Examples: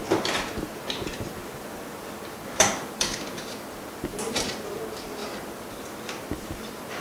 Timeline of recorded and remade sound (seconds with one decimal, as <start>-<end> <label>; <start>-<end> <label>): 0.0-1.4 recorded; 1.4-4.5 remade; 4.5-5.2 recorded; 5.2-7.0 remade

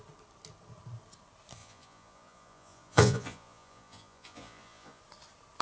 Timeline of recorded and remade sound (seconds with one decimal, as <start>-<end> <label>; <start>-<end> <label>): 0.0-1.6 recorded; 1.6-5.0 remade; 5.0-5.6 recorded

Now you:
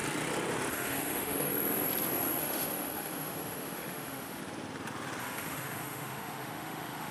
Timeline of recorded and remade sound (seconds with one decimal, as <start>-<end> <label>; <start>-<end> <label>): 0.0-0.7 recorded; 0.7-1.5 remade; 1.5-2.4 recorded; 2.4-4.4 remade; 4.4-5.2 recorded; 5.2-7.1 remade

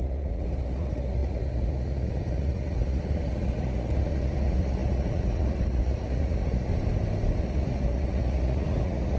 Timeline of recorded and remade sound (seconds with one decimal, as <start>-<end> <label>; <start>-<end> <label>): 0.0-6.7 remade; 6.7-7.4 recorded; 7.4-9.2 remade

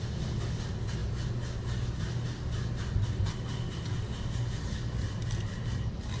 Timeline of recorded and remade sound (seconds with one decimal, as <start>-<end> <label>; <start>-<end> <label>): 0.0-6.2 recorded

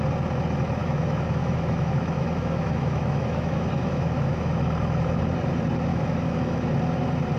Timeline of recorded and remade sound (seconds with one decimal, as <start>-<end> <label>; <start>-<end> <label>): 0.0-0.8 recorded; 0.8-5.2 remade; 5.2-5.9 recorded; 5.9-6.7 remade; 6.7-7.4 recorded

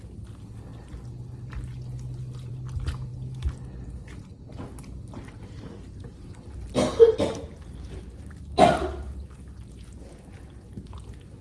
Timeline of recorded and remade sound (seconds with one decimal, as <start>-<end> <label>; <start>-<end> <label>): 0.0-11.4 recorded